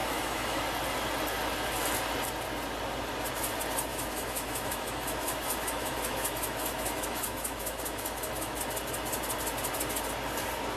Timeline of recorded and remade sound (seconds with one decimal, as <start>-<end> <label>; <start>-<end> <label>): 0.0-0.6 remade; 0.6-3.9 recorded; 3.9-8.6 remade; 8.6-10.8 recorded